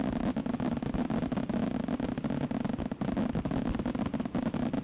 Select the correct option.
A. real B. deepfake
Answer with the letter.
A